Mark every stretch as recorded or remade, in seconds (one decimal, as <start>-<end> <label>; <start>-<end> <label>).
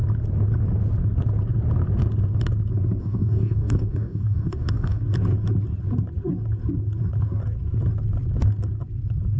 0.0-3.0 recorded; 3.0-5.0 remade; 5.0-9.4 recorded